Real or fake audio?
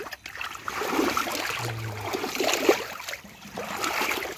real